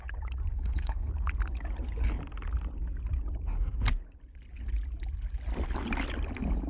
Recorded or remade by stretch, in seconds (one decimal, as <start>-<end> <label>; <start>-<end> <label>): 0.0-0.5 recorded; 0.5-1.1 remade; 1.1-6.7 recorded